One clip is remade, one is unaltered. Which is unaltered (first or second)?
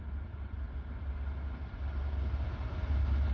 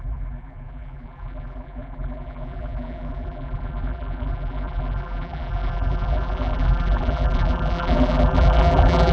first